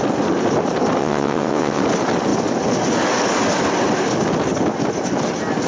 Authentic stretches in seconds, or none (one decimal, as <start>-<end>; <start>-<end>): 0.0-1.0; 1.8-5.7